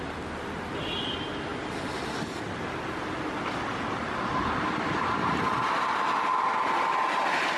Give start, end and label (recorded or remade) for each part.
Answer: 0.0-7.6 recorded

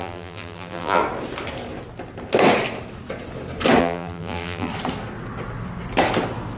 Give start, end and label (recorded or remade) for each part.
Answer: 0.0-1.0 remade; 1.0-3.8 recorded; 3.8-4.7 remade; 4.7-6.6 recorded